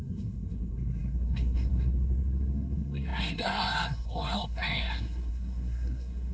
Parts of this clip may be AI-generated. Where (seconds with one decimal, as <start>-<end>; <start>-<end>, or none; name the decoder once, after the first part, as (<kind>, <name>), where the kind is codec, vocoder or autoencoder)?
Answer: 0.0-6.3 (codec, SNAC)